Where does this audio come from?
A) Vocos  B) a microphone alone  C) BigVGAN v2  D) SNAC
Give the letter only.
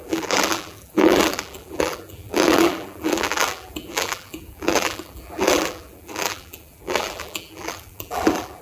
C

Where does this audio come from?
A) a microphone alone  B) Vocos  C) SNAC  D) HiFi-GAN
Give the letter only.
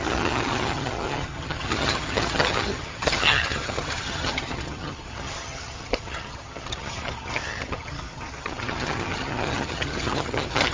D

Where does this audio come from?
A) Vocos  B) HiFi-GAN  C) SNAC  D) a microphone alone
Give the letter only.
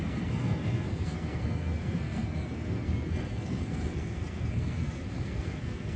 C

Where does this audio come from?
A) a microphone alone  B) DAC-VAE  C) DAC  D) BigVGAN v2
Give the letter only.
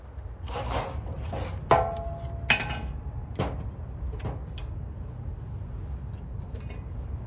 A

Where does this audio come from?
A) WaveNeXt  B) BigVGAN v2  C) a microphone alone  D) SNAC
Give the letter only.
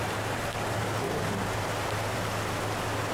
C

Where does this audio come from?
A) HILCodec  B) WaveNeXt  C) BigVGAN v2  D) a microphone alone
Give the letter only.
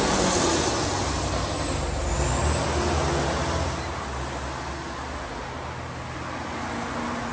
D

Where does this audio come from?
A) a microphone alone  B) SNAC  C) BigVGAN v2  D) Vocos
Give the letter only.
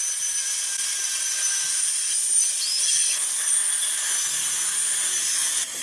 A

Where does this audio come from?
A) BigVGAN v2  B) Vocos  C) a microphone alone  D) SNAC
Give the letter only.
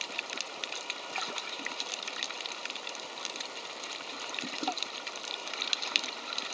A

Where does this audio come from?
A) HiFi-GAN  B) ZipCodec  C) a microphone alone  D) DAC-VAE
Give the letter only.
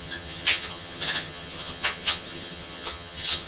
A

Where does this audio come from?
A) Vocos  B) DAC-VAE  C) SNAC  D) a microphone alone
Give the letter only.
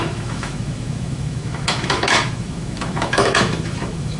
B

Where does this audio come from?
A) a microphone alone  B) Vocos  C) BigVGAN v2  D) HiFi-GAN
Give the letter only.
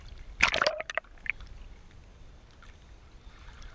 A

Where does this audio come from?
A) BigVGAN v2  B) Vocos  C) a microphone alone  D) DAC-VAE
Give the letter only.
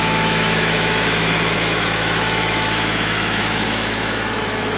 D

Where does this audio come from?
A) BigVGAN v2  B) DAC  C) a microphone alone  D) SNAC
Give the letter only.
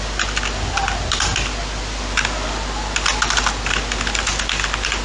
C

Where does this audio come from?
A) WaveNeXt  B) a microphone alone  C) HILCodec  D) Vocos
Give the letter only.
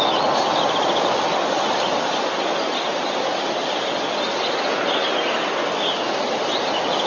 B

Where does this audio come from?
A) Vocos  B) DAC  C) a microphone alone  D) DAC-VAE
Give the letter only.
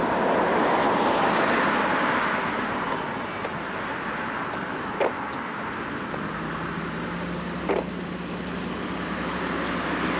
C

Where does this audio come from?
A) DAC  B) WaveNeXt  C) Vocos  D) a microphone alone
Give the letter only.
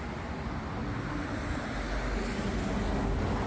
D